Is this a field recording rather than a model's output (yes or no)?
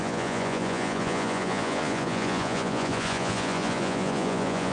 no